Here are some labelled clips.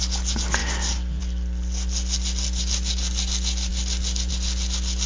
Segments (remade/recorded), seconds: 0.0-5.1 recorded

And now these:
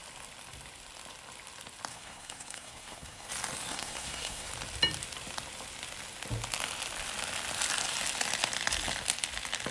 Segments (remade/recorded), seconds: 0.0-1.9 recorded; 1.9-3.3 remade; 3.3-3.7 recorded; 3.7-4.5 remade; 4.5-9.7 recorded

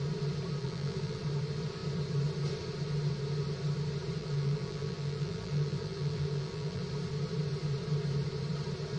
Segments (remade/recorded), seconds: 0.0-0.6 recorded; 0.6-1.2 remade; 1.2-4.2 recorded; 4.2-6.8 remade; 6.8-9.0 recorded

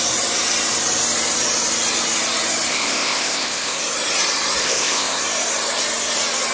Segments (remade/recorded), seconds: 0.0-2.7 recorded; 2.7-3.8 remade; 3.8-4.6 recorded; 4.6-5.2 remade; 5.2-6.5 recorded

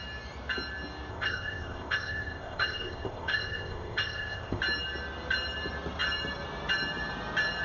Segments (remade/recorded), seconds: 0.0-1.1 recorded; 1.1-4.6 remade; 4.6-7.6 recorded